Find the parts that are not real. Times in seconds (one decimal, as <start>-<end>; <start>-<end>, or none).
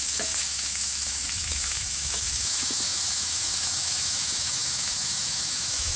0.0-6.0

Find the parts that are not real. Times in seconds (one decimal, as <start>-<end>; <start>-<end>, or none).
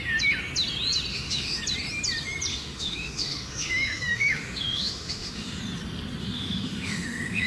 1.1-1.6; 2.5-5.6; 6.2-7.5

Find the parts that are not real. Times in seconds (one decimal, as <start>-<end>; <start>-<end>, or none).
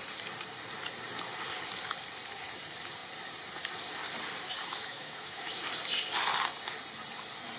4.6-5.6